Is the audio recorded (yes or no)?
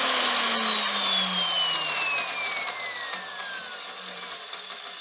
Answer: yes